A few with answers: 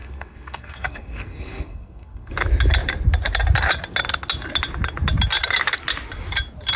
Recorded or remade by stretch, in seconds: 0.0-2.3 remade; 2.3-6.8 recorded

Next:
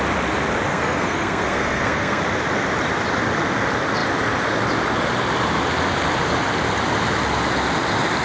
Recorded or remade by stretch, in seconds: 0.0-0.7 recorded; 0.7-2.2 remade; 2.2-8.2 recorded

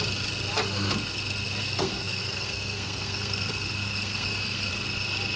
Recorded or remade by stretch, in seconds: 0.0-1.6 recorded; 1.6-4.7 remade; 4.7-5.4 recorded